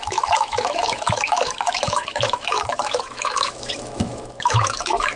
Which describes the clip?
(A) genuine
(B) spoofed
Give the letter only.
B